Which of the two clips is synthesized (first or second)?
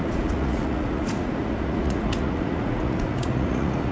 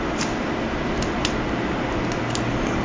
first